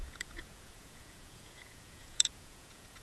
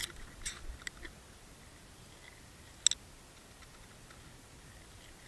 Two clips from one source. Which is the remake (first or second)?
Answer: first